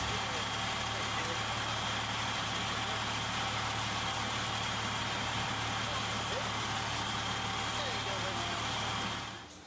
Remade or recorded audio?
recorded